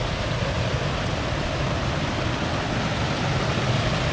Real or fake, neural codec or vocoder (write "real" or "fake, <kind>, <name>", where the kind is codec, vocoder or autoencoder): real